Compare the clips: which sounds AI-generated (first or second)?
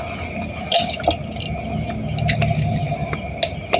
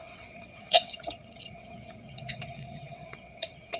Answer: second